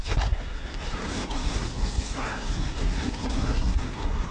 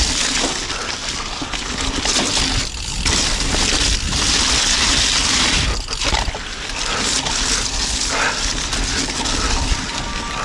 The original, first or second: second